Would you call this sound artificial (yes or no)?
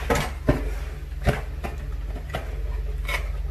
no